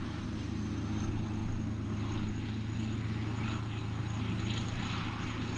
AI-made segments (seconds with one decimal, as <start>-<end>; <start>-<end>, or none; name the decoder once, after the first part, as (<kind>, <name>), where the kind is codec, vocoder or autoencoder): none